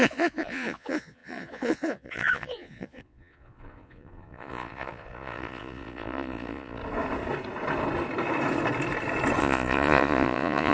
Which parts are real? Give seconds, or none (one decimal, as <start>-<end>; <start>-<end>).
6.8-9.4